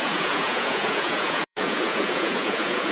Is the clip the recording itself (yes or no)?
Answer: no